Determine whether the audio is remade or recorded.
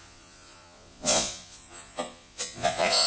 remade